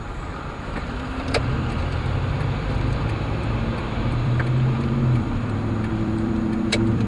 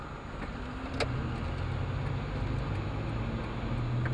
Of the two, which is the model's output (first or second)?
first